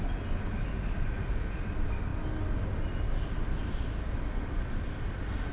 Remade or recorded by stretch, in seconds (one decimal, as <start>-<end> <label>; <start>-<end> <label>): 0.0-5.5 recorded